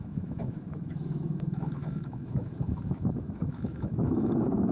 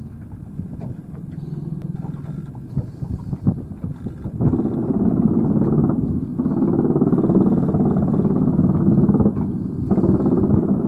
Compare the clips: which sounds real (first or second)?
second